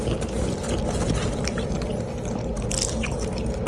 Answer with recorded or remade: recorded